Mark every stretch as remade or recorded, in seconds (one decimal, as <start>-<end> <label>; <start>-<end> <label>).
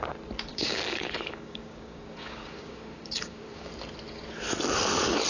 0.0-0.5 recorded; 0.5-3.7 remade; 3.7-5.3 recorded